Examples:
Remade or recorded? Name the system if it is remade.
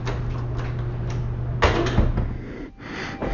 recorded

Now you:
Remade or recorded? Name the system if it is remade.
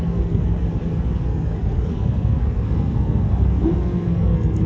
remade, codec, SNAC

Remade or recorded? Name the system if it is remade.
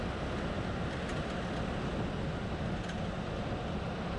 recorded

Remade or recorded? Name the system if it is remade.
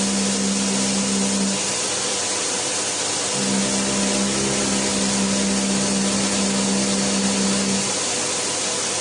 recorded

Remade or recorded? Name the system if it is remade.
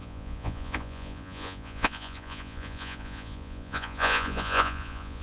remade, vocoder, Vocos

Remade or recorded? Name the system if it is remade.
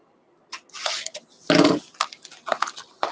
recorded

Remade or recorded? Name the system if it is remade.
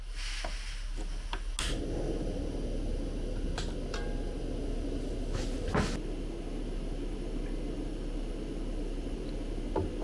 recorded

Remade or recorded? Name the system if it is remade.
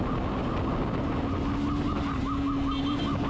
recorded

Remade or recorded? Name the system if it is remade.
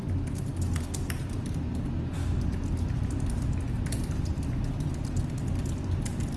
recorded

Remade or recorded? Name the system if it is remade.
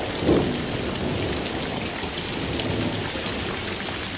recorded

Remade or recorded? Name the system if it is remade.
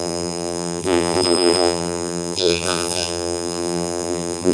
remade, vocoder, BigVGAN v2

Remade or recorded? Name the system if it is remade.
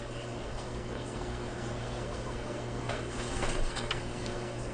remade, codec, SNAC